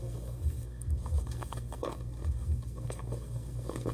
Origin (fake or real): fake